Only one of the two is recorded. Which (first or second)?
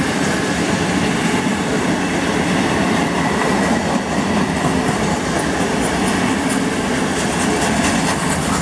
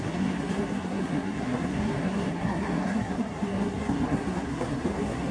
first